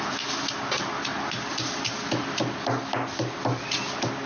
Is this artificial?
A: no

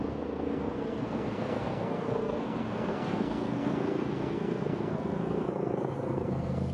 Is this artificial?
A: yes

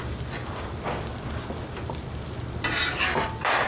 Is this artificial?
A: no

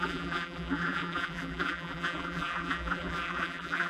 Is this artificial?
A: yes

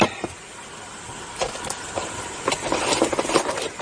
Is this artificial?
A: no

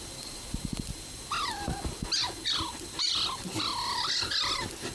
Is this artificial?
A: no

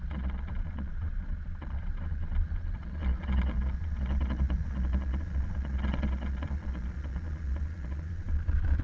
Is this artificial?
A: yes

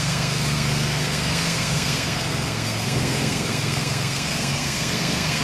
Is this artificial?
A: yes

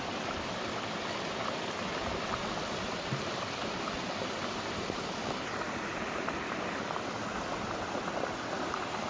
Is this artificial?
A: no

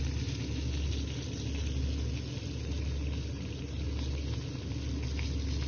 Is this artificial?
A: no